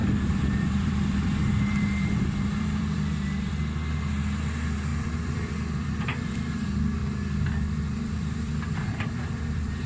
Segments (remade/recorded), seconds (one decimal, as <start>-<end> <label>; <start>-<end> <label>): 0.0-3.5 remade; 3.5-4.9 recorded; 4.9-6.4 remade; 6.4-7.0 recorded; 7.0-9.9 remade

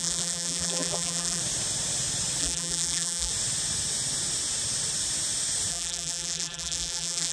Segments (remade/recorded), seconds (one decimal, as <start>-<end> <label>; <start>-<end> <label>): 0.0-1.4 remade; 1.4-2.4 recorded; 2.4-3.3 remade; 3.3-5.7 recorded; 5.7-7.3 remade

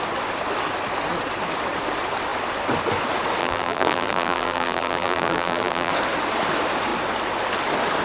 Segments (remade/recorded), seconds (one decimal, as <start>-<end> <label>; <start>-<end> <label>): 0.0-3.4 recorded; 3.4-5.9 remade; 5.9-8.0 recorded

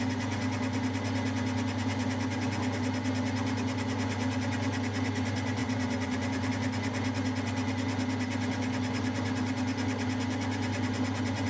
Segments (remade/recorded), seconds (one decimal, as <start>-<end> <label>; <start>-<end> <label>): 0.0-5.6 recorded; 5.6-6.5 remade; 6.5-11.5 recorded

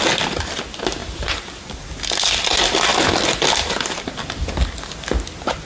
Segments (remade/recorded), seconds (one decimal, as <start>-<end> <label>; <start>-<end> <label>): 0.0-1.0 recorded; 1.0-1.9 remade; 1.9-5.7 recorded

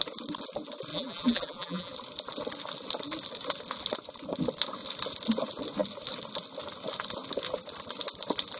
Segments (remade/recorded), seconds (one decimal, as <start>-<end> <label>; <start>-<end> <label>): 0.0-0.9 recorded; 0.9-1.9 remade; 1.9-8.6 recorded

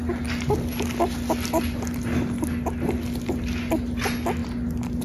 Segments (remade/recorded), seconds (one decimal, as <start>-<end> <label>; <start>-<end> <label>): 0.0-5.0 recorded